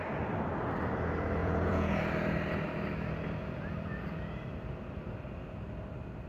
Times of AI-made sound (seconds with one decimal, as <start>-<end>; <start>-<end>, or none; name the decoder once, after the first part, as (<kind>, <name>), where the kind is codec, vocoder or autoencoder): 1.4-2.0 (vocoder, Vocos)